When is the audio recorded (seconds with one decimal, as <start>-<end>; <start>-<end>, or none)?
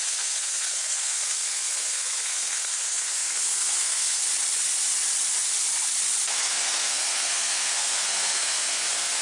4.2-6.3